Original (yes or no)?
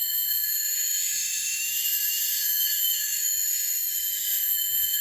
no